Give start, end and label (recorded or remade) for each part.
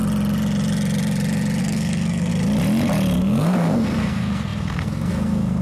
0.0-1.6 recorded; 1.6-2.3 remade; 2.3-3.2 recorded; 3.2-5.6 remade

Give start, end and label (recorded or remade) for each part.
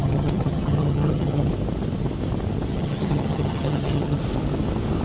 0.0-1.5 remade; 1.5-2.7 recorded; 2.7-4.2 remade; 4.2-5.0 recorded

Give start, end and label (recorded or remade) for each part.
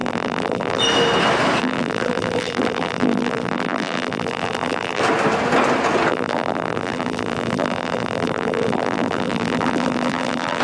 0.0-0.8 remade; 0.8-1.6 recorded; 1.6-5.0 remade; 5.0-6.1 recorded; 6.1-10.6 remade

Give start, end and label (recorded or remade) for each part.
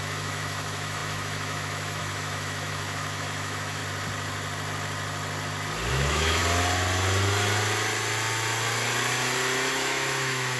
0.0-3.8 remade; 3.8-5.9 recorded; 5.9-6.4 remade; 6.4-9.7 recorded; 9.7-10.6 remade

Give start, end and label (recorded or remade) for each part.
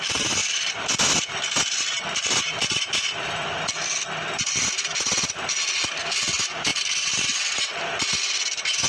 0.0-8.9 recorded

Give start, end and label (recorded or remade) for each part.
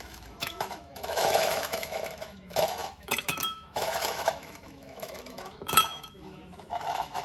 0.0-7.2 remade